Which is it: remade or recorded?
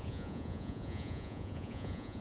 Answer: remade